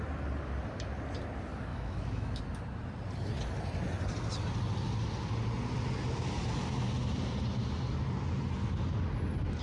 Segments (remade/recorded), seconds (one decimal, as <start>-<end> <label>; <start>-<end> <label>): 0.0-1.7 recorded; 1.7-2.4 remade; 2.4-9.6 recorded